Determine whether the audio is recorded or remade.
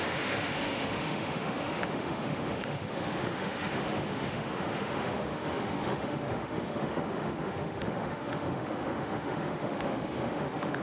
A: remade